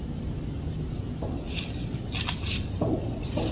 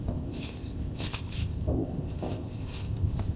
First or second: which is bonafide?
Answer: first